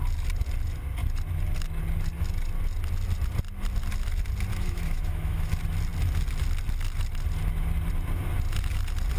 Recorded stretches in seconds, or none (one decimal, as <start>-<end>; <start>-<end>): 0.0-4.5; 5.5-9.2